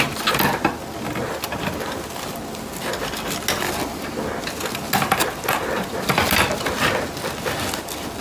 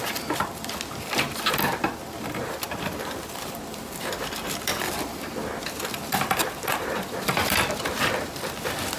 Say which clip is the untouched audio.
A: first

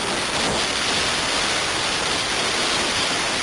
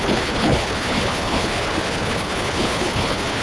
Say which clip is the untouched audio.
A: first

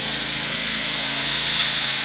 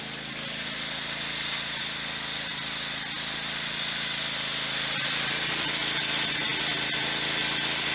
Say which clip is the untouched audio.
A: second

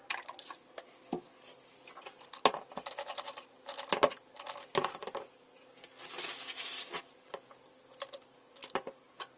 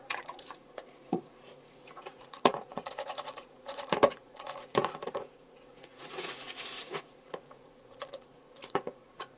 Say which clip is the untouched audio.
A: first